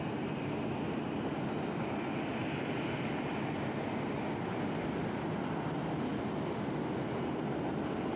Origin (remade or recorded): recorded